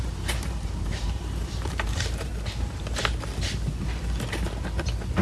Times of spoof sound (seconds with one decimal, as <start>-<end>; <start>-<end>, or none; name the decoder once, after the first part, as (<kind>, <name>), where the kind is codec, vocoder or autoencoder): 0.0-2.3 (vocoder, BigVGAN v2)